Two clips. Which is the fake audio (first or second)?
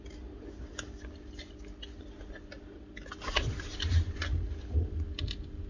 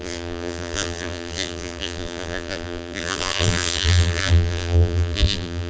second